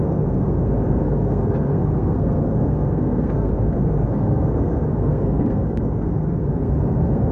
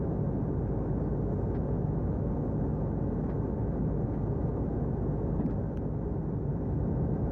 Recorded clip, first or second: second